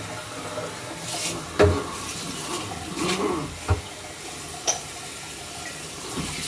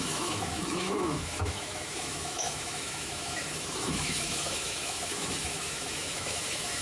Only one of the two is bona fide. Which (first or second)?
first